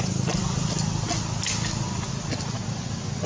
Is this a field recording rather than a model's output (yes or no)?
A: yes